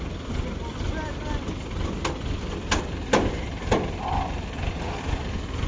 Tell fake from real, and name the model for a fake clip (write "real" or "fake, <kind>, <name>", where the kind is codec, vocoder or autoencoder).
real